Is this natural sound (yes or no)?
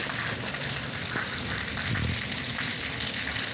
yes